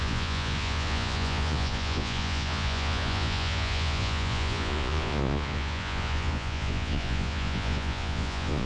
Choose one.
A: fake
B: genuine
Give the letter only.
A